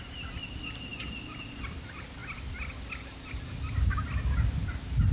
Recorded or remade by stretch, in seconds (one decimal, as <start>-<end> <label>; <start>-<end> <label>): 0.0-5.1 recorded

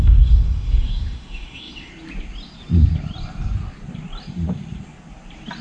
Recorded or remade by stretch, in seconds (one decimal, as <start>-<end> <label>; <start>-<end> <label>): 0.0-1.9 remade; 1.9-5.6 recorded

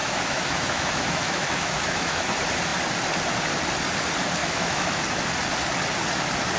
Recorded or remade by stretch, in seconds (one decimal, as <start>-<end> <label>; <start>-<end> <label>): 0.0-2.3 remade; 2.3-4.4 recorded; 4.4-5.0 remade; 5.0-6.6 recorded

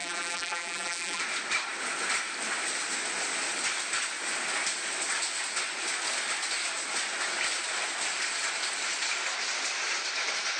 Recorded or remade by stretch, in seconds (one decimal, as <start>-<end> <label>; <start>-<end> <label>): 0.0-1.2 remade; 1.2-10.6 recorded

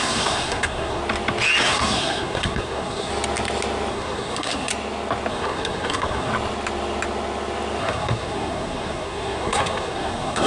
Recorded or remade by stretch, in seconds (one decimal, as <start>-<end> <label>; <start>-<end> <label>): 0.0-1.0 remade; 1.0-1.6 recorded; 1.6-3.1 remade; 3.1-3.9 recorded; 3.9-4.7 remade; 4.7-5.3 recorded; 5.3-6.3 remade; 6.3-7.8 recorded; 7.8-10.5 remade

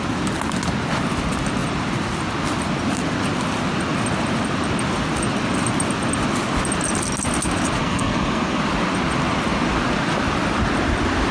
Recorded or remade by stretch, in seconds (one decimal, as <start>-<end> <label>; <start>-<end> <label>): 0.0-7.8 recorded; 7.8-8.6 remade; 8.6-11.3 recorded

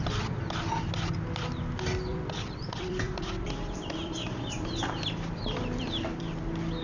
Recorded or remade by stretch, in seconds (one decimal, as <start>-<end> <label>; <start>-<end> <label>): 0.0-2.1 recorded; 2.1-6.2 remade; 6.2-6.8 recorded